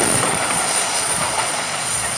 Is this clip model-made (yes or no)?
yes